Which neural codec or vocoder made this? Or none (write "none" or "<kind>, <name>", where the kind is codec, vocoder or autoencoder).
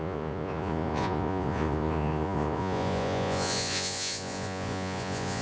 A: vocoder, Vocos